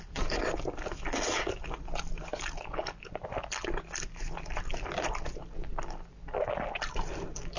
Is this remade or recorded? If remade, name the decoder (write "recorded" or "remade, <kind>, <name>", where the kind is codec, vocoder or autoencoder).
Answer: recorded